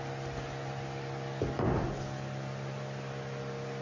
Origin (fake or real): real